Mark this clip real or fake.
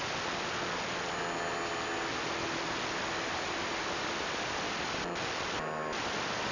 real